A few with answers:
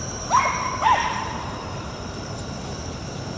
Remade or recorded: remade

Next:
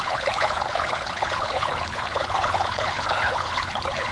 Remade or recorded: remade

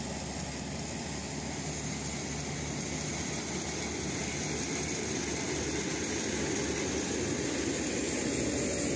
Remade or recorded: recorded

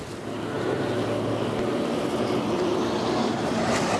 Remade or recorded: recorded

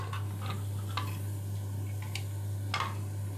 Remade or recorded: recorded